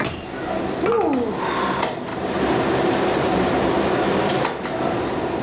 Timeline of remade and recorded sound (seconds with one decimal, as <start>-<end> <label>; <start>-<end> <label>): 0.0-2.1 recorded; 2.1-3.7 remade; 3.7-5.4 recorded